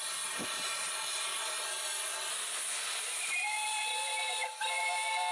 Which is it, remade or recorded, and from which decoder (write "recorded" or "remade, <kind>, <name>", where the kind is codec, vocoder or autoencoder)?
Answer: recorded